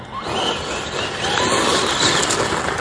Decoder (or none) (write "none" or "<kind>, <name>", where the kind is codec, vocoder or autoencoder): none